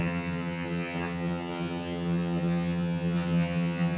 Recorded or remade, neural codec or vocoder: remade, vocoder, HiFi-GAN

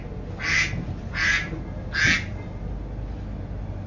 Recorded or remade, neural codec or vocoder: recorded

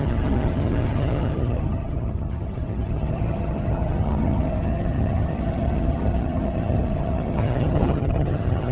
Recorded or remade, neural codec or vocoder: remade, vocoder, HiFi-GAN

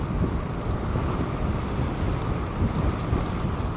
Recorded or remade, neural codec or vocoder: recorded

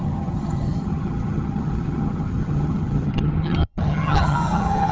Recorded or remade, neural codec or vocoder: remade, vocoder, HiFi-GAN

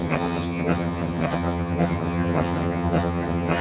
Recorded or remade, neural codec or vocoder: remade, vocoder, HiFi-GAN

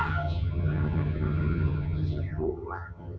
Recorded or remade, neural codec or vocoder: remade, vocoder, HiFi-GAN